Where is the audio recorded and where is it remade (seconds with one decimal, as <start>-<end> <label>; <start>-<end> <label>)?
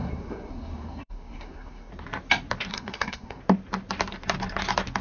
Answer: 0.0-1.9 remade; 1.9-2.7 recorded; 2.7-3.4 remade; 3.4-5.0 recorded